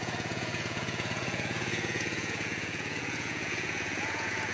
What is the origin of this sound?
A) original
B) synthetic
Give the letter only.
B